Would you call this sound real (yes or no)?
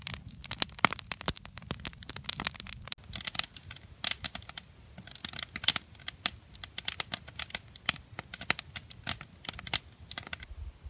yes